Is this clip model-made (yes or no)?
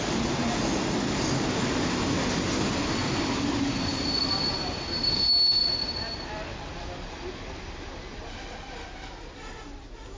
no